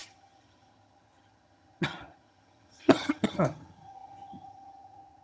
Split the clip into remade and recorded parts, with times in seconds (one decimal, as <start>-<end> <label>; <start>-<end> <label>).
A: 0.0-5.2 remade